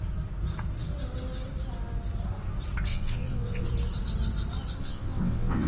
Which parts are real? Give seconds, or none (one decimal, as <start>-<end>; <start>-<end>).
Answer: 0.0-2.9; 3.7-4.8